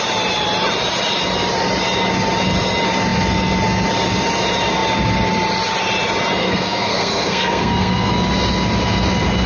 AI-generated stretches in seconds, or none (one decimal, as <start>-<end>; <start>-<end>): 6.4-8.1